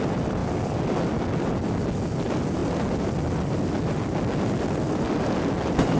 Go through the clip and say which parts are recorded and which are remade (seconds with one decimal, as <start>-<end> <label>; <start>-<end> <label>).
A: 0.0-6.0 recorded